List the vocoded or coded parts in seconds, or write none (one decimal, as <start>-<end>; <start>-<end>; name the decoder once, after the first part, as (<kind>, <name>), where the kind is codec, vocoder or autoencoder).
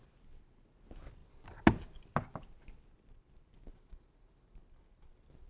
none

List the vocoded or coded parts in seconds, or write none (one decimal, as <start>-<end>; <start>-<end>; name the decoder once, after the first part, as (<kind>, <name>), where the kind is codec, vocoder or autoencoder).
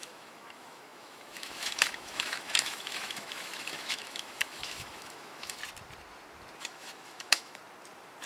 0.0-5.6 (autoencoder, DAC-VAE); 6.6-7.6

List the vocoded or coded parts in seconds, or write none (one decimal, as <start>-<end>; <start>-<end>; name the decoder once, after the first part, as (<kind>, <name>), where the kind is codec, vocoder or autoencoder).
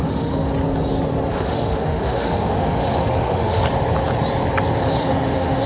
0.0-0.5 (autoencoder, DAC-VAE); 1.3-3.6; 4.8-5.7